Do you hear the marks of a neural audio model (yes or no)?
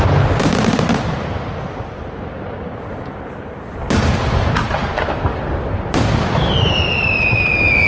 yes